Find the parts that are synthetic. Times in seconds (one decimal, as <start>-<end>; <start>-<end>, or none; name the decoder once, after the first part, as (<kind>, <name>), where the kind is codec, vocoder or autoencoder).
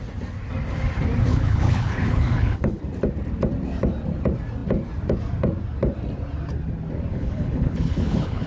1.3-2.8 (codec, HILCodec); 7.1-8.5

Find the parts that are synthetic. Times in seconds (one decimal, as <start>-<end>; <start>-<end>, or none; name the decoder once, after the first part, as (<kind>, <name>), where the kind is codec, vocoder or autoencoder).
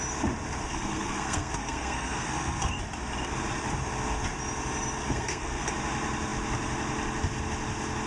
0.6-2.8 (codec, SNAC); 5.0-5.7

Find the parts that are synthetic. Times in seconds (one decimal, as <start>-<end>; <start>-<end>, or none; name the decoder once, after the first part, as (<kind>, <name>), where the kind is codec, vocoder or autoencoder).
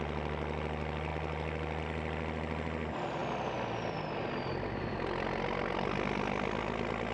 none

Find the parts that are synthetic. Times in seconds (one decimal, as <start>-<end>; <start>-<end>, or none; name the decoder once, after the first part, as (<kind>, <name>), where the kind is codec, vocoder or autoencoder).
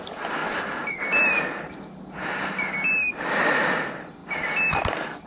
0.0-0.4 (vocoder, BigVGAN v2); 3.1-4.2; 4.8-5.3